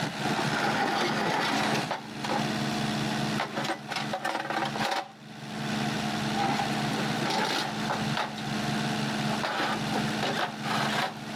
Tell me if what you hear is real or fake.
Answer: real